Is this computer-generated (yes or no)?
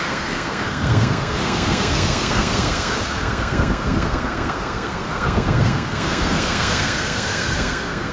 yes